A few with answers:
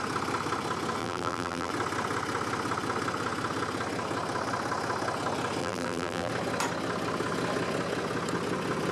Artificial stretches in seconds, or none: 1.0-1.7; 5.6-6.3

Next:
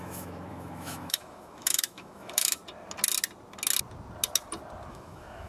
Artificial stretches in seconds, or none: 0.0-2.6; 4.9-5.5